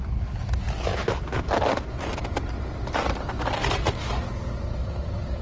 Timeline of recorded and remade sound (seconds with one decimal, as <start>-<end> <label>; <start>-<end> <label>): 0.0-5.4 recorded